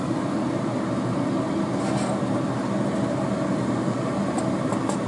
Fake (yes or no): no